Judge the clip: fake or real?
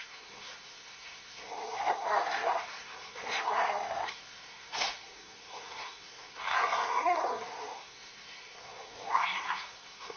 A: fake